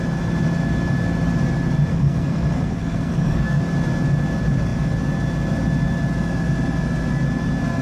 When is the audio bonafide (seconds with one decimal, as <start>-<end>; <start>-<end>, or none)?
0.0-1.9; 3.6-7.8